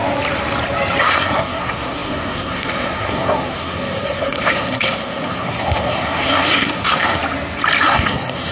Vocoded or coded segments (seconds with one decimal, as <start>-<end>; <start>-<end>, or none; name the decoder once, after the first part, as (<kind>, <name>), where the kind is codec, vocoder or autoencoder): 1.0-7.2 (codec, SNAC); 7.8-8.5